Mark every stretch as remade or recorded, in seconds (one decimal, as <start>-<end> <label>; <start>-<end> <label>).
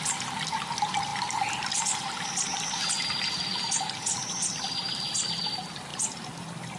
0.0-6.8 recorded